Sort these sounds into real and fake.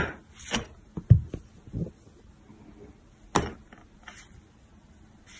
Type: real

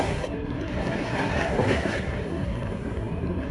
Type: fake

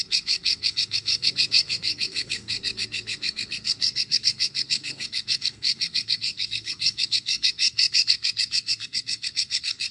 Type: fake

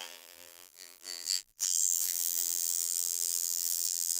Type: fake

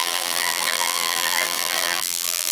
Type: fake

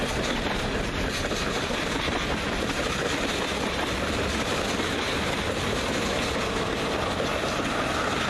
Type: real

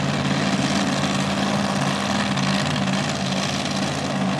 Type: real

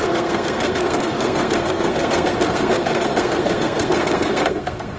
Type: fake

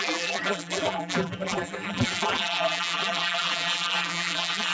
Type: fake